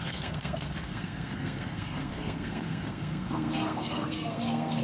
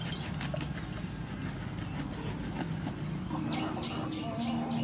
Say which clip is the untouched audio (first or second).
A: second